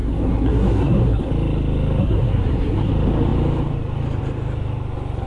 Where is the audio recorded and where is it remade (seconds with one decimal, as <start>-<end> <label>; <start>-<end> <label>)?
0.0-1.3 remade; 1.3-2.0 recorded; 2.0-2.9 remade; 2.9-5.3 recorded